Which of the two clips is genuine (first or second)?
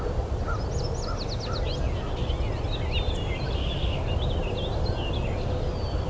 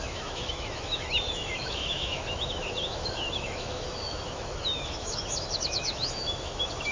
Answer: first